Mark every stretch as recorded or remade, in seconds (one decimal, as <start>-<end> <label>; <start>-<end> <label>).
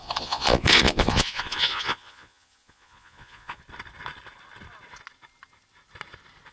0.0-3.6 remade; 3.6-6.5 recorded